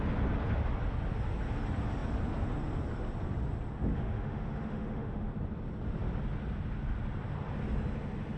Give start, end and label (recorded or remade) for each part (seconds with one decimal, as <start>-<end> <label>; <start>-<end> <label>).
0.0-3.9 recorded; 3.9-5.3 remade; 5.3-8.4 recorded